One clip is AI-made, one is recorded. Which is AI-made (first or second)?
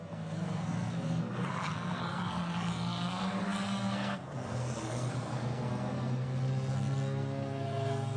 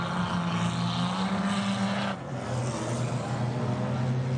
first